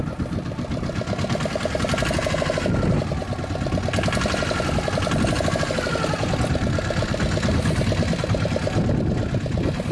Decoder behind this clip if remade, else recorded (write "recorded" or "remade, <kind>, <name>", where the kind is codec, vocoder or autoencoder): recorded